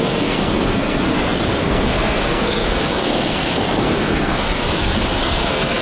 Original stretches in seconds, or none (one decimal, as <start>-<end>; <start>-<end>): none